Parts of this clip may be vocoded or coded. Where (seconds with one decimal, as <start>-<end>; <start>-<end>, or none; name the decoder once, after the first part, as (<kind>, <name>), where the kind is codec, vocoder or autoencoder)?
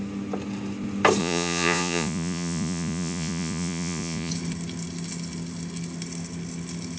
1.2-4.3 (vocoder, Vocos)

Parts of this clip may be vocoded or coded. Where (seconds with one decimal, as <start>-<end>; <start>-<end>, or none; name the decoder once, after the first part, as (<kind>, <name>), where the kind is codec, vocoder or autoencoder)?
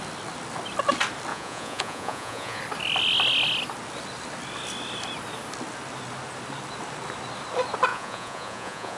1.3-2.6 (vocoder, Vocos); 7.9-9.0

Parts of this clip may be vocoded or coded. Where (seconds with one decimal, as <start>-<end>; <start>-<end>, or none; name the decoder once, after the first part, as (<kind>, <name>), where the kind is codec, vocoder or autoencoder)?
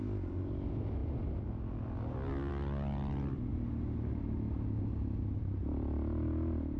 none